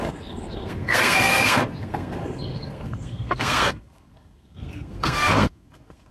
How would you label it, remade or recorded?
remade